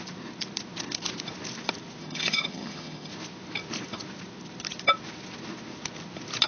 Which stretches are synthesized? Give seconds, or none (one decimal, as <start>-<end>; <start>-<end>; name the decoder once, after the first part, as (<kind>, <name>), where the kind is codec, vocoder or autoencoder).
2.0-3.1 (vocoder, HiFi-GAN)